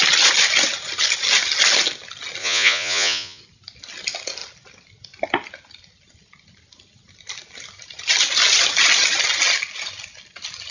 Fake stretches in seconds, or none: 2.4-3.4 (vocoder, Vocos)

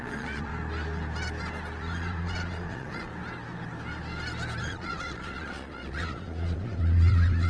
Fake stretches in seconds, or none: 0.0-0.5 (vocoder, Vocos); 1.8-3.1; 4.6-7.5

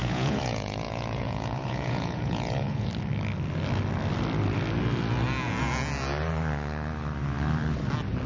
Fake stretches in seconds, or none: 0.0-2.9 (vocoder, Vocos)

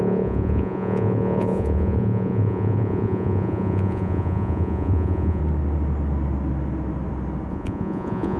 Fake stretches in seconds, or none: 0.0-5.4 (vocoder, Vocos); 7.5-8.4

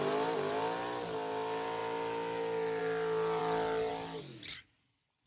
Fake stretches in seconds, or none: none

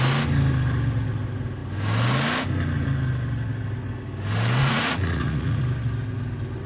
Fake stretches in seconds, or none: 4.6-5.6 (vocoder, Vocos)